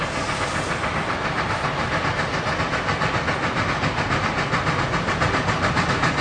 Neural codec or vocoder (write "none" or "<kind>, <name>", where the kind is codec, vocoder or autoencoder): none